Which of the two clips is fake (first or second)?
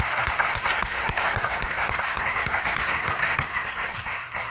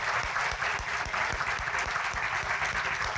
first